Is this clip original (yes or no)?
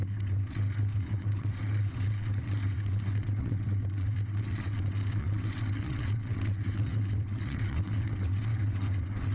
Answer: no